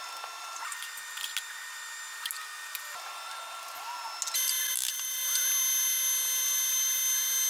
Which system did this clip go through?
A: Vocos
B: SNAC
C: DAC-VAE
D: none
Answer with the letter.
D